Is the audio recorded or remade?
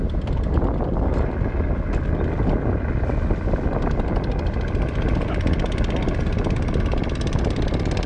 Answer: recorded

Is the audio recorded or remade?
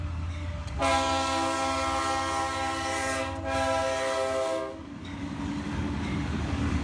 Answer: remade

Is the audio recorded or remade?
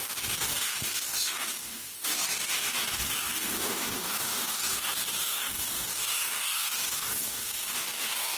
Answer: remade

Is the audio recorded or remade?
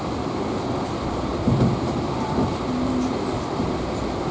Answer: recorded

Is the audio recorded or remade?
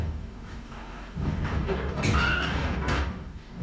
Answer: remade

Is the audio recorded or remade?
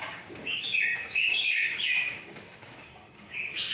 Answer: remade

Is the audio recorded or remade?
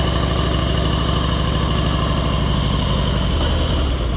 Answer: recorded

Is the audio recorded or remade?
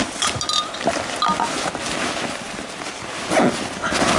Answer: recorded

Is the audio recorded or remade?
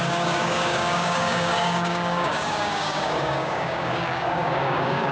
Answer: remade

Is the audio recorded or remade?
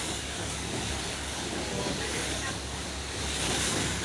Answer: remade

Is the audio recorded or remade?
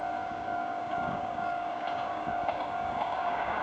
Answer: remade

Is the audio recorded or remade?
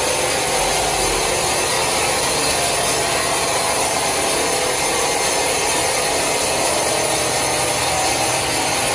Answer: recorded